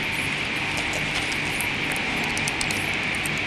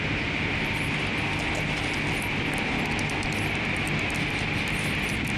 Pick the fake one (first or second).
first